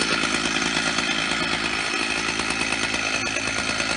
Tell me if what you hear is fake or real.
real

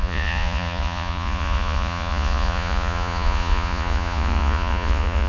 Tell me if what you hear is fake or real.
fake